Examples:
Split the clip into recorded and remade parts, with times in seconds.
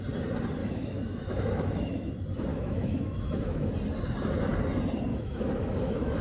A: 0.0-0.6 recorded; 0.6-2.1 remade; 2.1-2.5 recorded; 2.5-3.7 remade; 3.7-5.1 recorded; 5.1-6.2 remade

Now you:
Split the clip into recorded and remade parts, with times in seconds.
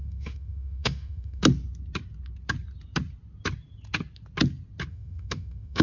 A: 0.0-1.4 remade; 1.4-4.9 recorded; 4.9-5.8 remade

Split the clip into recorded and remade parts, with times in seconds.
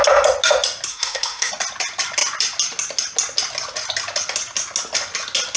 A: 0.0-0.9 recorded; 0.9-1.5 remade; 1.5-5.6 recorded